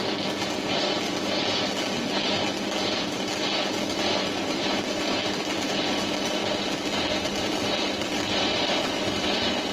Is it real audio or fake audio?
real